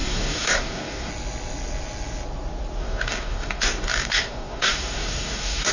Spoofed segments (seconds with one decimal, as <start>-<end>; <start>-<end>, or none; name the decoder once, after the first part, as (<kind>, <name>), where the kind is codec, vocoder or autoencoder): 0.0-1.1 (codec, DAC); 2.8-5.7